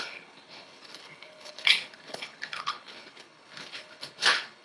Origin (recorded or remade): remade